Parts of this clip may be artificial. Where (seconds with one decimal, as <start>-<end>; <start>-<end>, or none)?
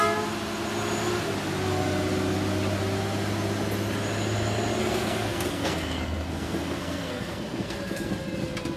4.8-8.1